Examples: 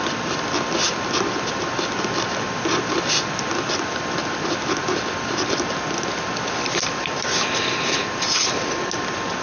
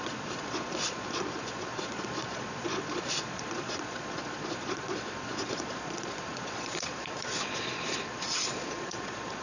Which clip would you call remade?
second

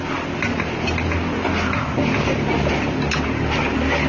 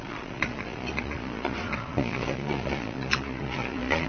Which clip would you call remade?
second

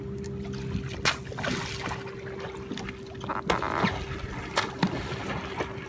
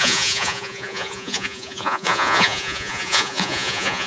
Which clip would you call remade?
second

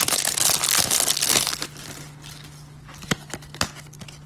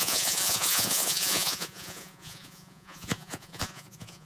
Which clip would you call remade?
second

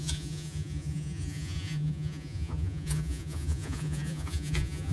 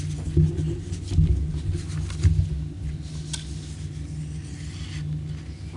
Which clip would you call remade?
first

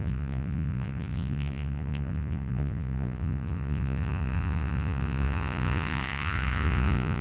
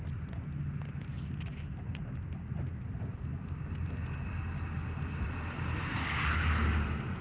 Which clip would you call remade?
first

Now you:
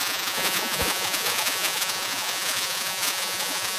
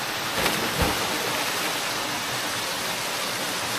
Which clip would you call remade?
first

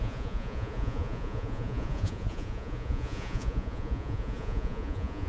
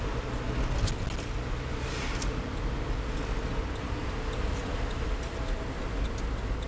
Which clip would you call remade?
first